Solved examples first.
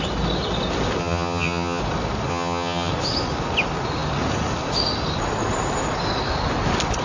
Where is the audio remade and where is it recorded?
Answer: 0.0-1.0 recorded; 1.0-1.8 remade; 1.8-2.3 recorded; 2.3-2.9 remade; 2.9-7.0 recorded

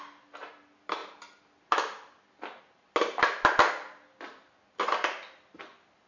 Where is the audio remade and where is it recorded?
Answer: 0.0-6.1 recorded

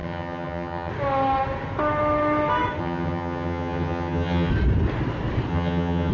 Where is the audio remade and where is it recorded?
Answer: 0.0-0.9 remade; 0.9-2.8 recorded; 2.8-4.5 remade; 4.5-5.5 recorded; 5.5-6.1 remade

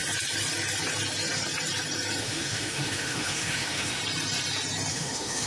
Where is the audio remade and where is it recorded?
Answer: 0.0-2.2 recorded; 2.2-4.0 remade; 4.0-4.9 recorded; 4.9-5.5 remade

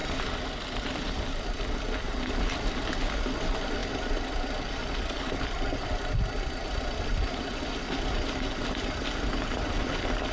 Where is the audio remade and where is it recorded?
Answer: 0.0-10.3 recorded

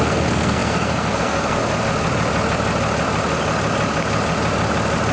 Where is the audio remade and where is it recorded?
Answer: 0.0-1.6 remade; 1.6-5.1 recorded